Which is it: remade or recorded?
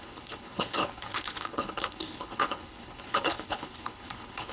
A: remade